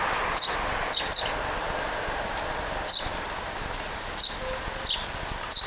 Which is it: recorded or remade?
recorded